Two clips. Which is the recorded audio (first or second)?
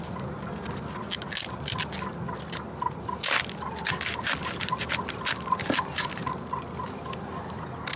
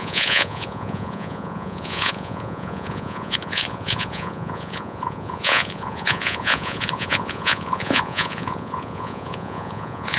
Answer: first